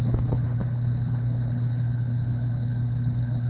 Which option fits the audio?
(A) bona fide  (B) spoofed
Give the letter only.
B